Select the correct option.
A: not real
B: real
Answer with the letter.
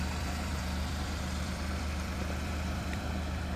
A